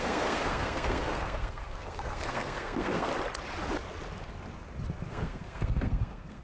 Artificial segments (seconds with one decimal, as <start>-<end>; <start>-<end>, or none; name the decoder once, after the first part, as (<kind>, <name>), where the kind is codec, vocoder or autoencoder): 0.0-3.1 (codec, SNAC); 5.1-6.4